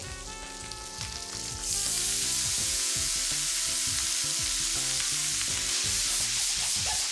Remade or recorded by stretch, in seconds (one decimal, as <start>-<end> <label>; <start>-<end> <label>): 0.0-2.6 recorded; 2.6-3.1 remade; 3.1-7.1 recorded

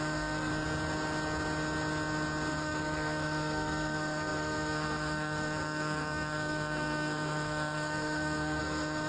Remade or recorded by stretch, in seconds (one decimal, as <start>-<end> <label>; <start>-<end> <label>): 0.0-0.5 remade; 0.5-2.5 recorded; 2.5-9.1 remade

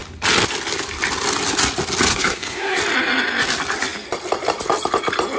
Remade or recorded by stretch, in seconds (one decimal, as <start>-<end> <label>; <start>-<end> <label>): 0.0-2.1 recorded; 2.1-2.8 remade; 2.8-5.4 recorded